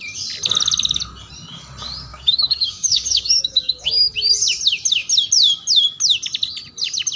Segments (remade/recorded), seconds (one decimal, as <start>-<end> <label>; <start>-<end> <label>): 0.0-2.1 recorded; 2.1-3.9 remade; 3.9-7.2 recorded